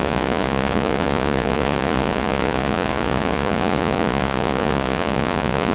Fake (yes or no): yes